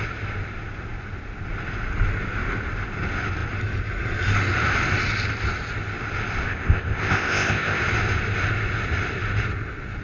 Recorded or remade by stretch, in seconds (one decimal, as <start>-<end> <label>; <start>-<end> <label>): 0.0-6.5 recorded; 6.5-7.8 remade; 7.8-10.0 recorded